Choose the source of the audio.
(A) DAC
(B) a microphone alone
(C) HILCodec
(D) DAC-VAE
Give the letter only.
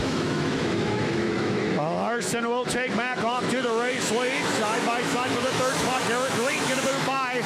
D